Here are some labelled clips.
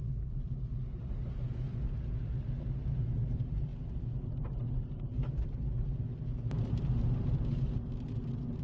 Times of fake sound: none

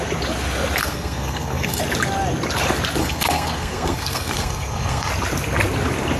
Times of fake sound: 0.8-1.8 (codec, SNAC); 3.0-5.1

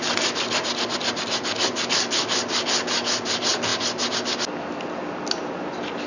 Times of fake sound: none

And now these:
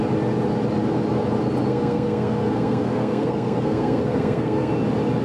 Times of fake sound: 1.7-4.7 (codec, SNAC)

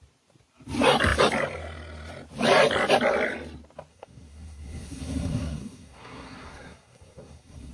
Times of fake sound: 3.9-7.7 (codec, SNAC)

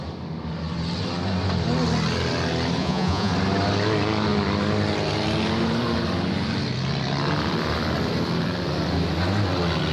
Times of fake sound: 2.8-3.3 (vocoder, Vocos)

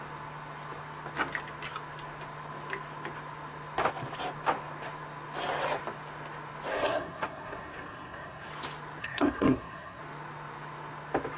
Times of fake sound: 6.7-8.5 (codec, SNAC); 9.0-10.0